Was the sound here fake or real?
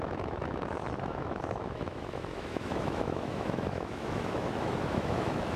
fake